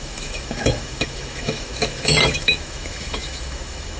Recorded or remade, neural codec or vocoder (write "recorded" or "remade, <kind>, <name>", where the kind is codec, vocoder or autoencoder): remade, autoencoder, DAC-VAE